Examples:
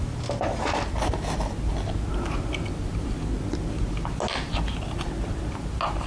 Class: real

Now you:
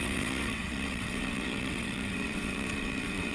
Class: fake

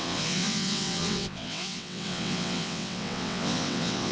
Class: fake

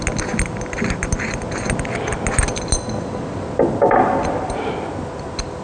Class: real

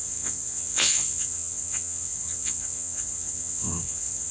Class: fake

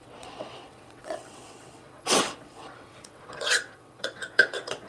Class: fake